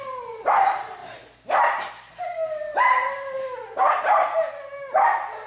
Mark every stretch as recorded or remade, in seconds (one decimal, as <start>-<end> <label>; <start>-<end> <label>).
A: 0.0-5.5 recorded